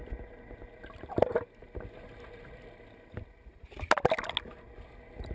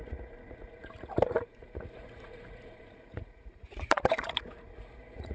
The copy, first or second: second